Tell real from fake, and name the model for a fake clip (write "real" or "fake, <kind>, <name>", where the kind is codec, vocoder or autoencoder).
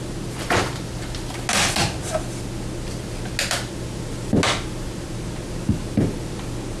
real